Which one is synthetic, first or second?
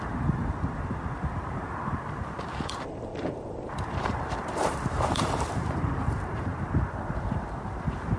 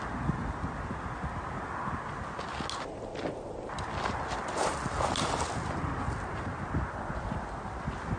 first